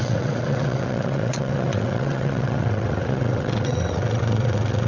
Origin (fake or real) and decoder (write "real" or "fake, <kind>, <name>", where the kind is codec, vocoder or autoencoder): fake, vocoder, WaveNeXt